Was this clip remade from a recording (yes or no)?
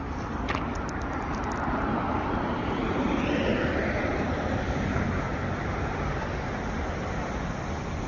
no